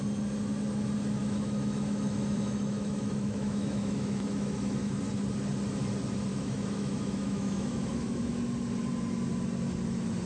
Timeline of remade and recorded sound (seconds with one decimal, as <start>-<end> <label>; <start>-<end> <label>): 0.0-1.2 recorded; 1.2-5.0 remade; 5.0-6.3 recorded; 6.3-8.4 remade; 8.4-10.3 recorded